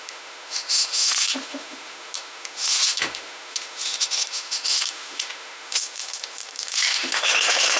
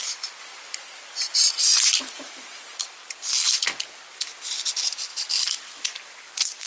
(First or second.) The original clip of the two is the second